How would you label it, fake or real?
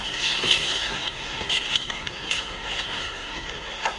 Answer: fake